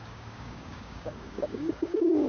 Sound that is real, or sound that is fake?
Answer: fake